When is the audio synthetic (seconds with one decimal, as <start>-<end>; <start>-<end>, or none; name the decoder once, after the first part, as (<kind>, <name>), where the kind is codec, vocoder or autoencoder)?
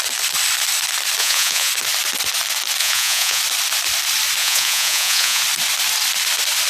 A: 1.2-1.7 (vocoder, Vocos); 2.8-3.4; 4.4-5.4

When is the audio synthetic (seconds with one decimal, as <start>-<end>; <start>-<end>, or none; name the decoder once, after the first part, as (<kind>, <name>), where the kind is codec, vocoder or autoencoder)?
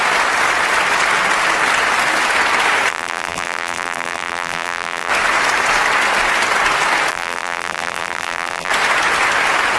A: 2.9-5.1 (vocoder, BigVGAN v2); 7.1-8.7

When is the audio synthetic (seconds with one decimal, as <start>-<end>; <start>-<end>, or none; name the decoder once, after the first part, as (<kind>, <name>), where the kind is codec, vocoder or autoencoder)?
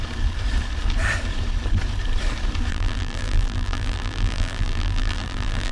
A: 2.7-5.7 (vocoder, BigVGAN v2)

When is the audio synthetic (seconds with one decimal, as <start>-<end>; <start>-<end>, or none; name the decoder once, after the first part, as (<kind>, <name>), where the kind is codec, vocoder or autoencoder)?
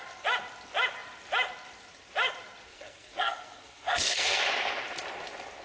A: 2.7-4.4 (codec, SNAC)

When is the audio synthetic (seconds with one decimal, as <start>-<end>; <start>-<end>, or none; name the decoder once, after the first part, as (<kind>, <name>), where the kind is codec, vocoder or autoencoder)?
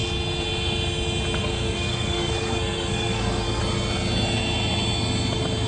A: 1.4-3.6 (codec, SNAC)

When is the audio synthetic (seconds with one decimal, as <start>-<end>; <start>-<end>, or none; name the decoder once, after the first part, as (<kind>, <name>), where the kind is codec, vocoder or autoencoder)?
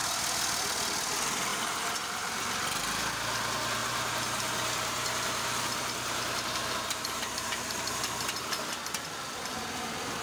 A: 1.5-2.3 (vocoder, BigVGAN v2); 3.8-8.7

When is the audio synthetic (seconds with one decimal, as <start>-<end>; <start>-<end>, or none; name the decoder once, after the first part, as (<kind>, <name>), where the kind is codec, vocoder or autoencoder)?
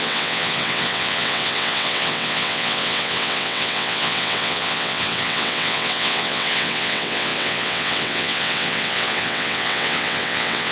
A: 0.0-10.7 (vocoder, WaveNeXt)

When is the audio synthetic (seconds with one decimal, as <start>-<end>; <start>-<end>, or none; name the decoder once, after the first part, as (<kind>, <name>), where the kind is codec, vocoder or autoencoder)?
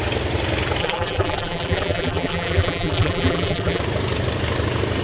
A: 0.8-3.8 (vocoder, BigVGAN v2)